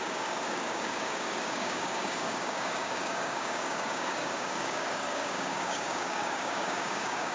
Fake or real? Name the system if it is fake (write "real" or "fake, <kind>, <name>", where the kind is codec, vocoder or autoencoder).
fake, codec, DAC